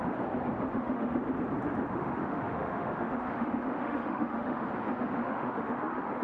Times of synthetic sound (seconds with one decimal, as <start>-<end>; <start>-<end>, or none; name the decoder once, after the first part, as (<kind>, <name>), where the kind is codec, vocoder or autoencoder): 0.7-1.3 (autoencoder, DAC-VAE); 1.9-4.6; 5.2-6.2